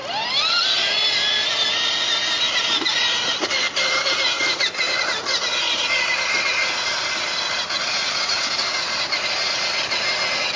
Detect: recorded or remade recorded